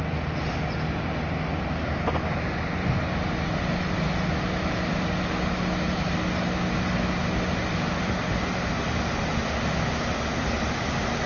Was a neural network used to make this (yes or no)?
no